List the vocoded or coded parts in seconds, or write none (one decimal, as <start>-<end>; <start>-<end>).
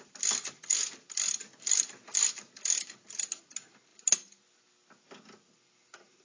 none